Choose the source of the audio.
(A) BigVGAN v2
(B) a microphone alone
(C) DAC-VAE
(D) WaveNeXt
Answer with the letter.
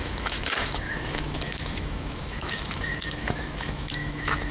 C